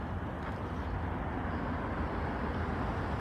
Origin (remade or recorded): recorded